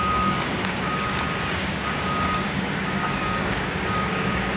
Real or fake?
fake